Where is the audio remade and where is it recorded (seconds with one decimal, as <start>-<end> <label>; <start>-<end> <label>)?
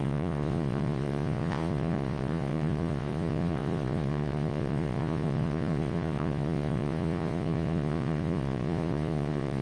0.0-9.6 remade